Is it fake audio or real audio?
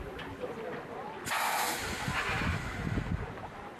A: real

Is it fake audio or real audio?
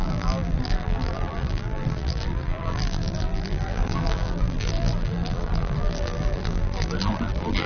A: fake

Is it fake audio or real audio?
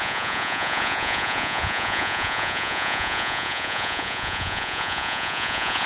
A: fake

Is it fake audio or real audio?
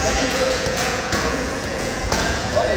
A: fake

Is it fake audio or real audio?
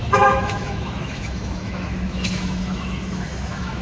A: fake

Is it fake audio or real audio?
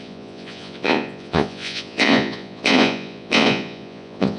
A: fake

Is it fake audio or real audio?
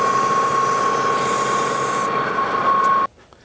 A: real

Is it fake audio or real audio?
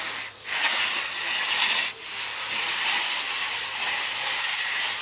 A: real